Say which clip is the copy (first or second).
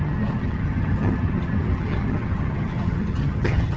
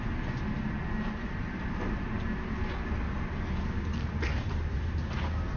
first